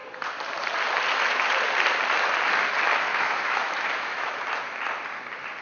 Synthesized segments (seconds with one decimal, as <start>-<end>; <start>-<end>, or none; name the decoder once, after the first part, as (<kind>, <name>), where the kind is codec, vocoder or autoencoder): 3.1-4.3 (autoencoder, DAC-VAE)